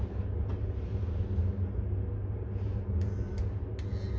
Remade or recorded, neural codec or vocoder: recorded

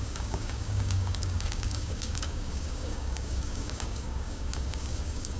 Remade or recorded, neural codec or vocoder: remade, codec, DAC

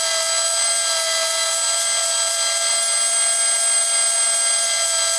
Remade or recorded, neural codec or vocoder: recorded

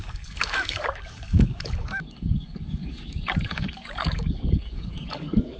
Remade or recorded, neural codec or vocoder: remade, codec, DAC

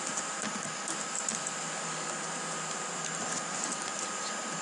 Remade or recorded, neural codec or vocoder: remade, vocoder, BigVGAN v2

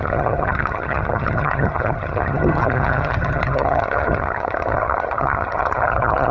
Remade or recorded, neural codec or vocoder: remade, vocoder, HiFi-GAN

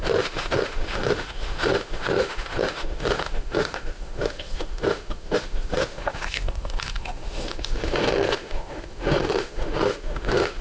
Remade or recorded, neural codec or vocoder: remade, autoencoder, DAC-VAE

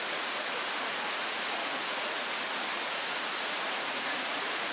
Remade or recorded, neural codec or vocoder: remade, vocoder, Vocos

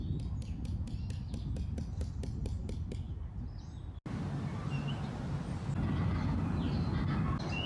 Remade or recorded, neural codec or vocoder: recorded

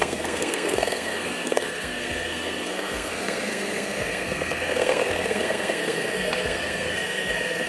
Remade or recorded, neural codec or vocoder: remade, codec, SNAC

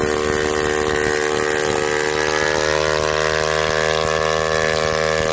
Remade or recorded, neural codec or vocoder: recorded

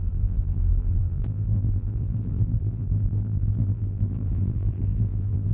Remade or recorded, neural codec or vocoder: remade, vocoder, BigVGAN v2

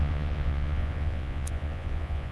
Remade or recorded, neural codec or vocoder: remade, vocoder, Vocos